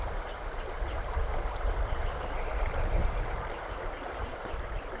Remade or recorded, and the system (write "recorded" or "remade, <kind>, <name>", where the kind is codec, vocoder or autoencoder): remade, vocoder, BigVGAN v2